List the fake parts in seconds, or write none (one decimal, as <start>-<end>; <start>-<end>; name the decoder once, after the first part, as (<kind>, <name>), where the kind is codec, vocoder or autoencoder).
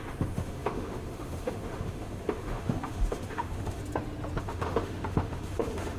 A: 0.0-3.8 (autoencoder, DAC-VAE); 4.4-6.0